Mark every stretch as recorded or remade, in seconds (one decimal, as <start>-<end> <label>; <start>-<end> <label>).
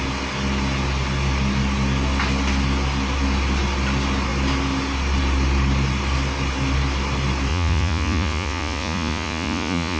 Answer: 0.0-7.5 recorded; 7.5-10.0 remade